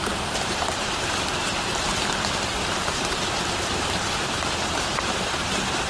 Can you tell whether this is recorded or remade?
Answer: remade